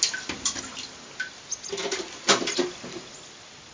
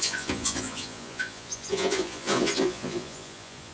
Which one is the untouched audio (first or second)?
first